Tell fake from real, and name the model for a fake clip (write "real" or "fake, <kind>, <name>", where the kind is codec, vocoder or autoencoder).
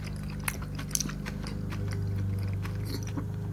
real